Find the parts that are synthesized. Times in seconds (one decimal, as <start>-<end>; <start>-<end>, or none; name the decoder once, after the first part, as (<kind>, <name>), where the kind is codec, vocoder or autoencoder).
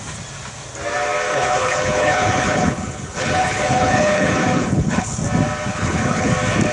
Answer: 1.3-5.2 (codec, HILCodec); 5.7-6.3